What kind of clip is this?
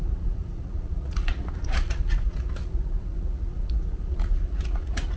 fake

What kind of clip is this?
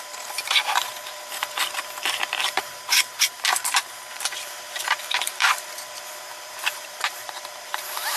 fake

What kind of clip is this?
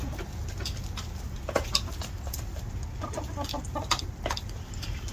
real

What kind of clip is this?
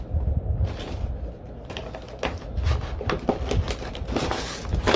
real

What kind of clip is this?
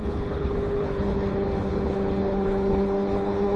fake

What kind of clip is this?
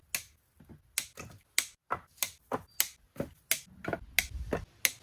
real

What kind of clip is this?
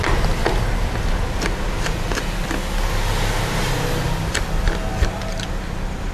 real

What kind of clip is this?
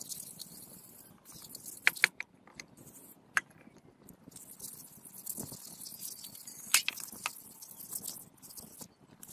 real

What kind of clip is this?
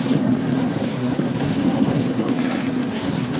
fake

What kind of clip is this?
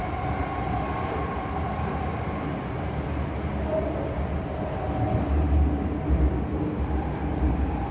real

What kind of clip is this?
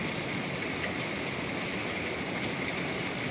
real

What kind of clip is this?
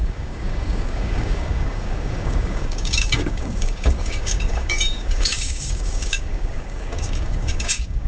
fake